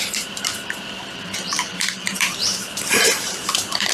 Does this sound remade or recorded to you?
remade